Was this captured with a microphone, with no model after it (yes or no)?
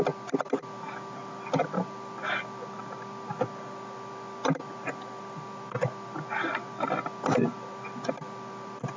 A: yes